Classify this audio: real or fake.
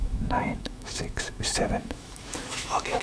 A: fake